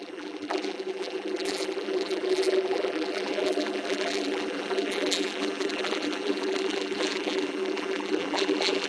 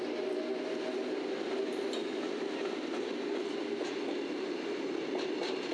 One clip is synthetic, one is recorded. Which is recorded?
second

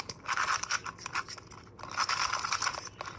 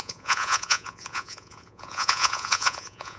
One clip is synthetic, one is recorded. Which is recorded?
first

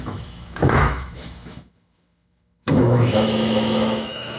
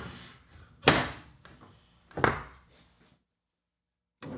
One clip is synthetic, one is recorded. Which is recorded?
second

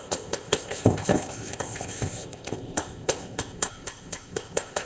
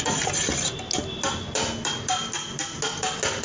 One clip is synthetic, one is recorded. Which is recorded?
second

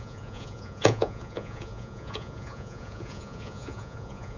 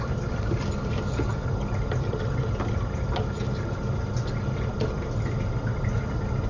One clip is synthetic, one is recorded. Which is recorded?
second